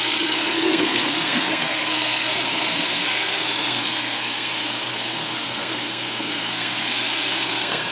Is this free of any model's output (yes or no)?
no